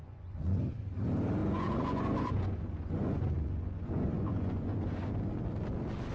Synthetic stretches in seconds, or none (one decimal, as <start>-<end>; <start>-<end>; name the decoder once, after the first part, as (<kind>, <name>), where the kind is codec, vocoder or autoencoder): 0.0-0.6 (vocoder, Vocos); 1.4-5.1